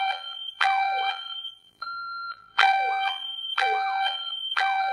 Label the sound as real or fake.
fake